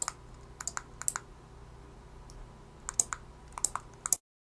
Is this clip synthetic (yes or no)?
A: no